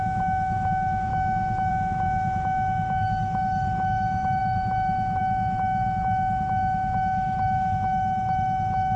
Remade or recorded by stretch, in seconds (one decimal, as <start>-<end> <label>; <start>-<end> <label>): 0.0-1.1 remade; 1.1-1.7 recorded; 1.7-9.0 remade